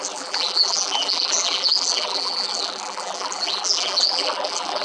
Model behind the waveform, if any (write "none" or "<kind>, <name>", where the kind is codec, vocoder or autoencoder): vocoder, BigVGAN v2